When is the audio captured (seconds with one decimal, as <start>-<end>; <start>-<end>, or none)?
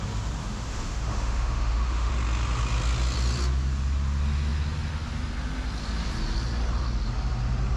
0.0-0.4; 2.1-7.8